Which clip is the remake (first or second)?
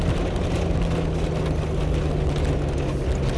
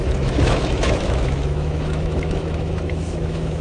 second